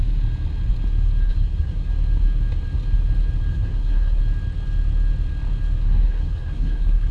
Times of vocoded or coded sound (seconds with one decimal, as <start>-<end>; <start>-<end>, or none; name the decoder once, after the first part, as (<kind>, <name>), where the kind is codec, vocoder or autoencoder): 1.2-1.9 (codec, SNAC); 3.5-4.2; 5.8-7.1